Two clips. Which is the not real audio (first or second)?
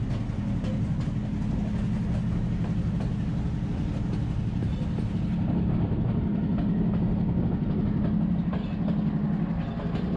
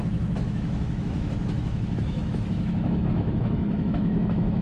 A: second